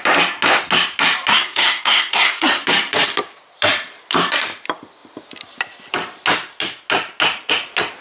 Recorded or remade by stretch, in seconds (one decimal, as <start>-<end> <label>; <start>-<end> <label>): 0.0-1.3 recorded; 1.3-2.6 remade; 2.6-8.0 recorded